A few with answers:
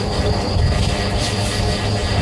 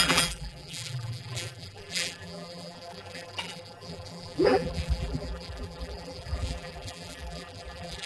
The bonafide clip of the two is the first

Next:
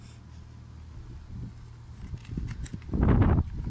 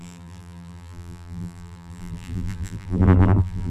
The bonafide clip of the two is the first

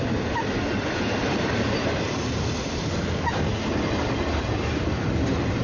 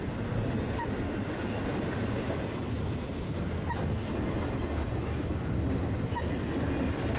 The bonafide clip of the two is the second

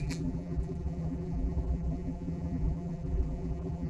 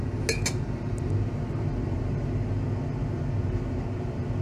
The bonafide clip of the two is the second